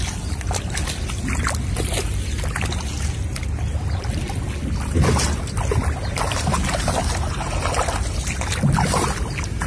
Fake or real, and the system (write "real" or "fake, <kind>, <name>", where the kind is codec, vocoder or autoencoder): real